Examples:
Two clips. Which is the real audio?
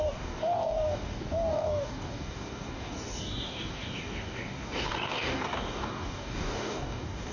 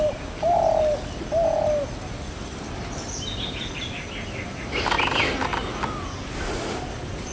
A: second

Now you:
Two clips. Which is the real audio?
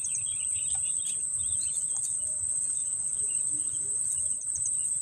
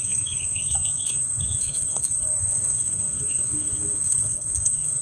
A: first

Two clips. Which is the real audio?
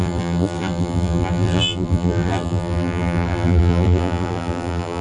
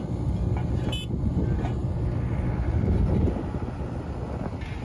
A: second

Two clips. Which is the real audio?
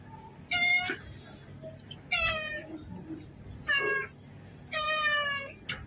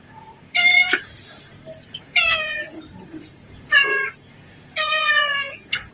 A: first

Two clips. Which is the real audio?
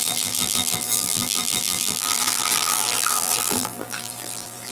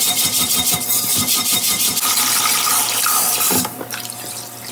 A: second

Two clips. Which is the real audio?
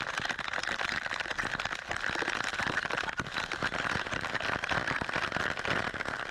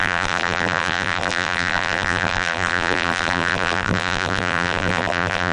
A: first